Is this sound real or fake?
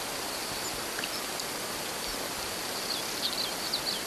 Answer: real